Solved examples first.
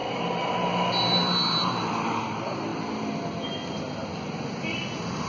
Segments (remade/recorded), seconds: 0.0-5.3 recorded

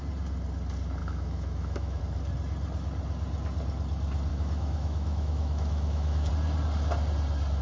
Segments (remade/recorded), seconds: 0.0-1.0 recorded; 1.0-2.0 remade; 2.0-4.3 recorded; 4.3-6.3 remade; 6.3-7.6 recorded

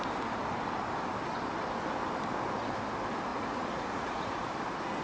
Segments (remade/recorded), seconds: 0.0-3.3 recorded; 3.3-4.5 remade; 4.5-5.0 recorded

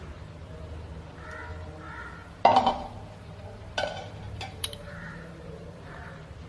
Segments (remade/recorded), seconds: 0.0-2.2 recorded; 2.2-6.1 remade; 6.1-6.5 recorded

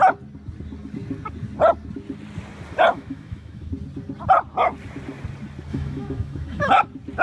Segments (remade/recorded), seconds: 0.0-2.9 recorded; 2.9-3.7 remade; 3.7-5.7 recorded; 5.7-6.7 remade; 6.7-7.2 recorded

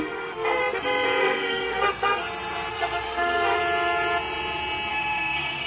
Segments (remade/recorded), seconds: 0.0-0.6 remade; 0.6-1.2 recorded; 1.2-2.2 remade; 2.2-2.7 recorded; 2.7-3.6 remade; 3.6-4.9 recorded; 4.9-5.7 remade

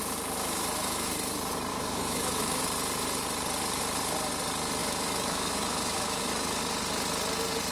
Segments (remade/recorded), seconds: 0.0-0.4 recorded; 0.4-1.1 remade; 1.1-1.7 recorded; 1.7-2.6 remade; 2.6-4.8 recorded; 4.8-6.6 remade; 6.6-7.7 recorded

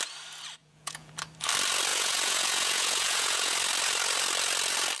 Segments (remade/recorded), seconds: 0.0-0.6 recorded; 0.6-1.1 remade; 1.1-1.9 recorded; 1.9-3.5 remade; 3.5-5.0 recorded